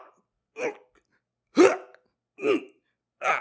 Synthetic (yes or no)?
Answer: no